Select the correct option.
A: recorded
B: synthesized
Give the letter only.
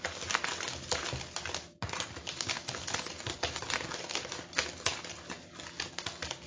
A